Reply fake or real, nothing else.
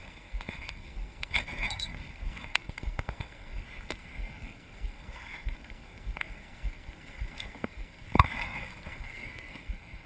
fake